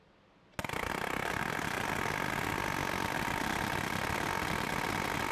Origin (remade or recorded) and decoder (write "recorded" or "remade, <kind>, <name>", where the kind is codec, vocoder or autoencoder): recorded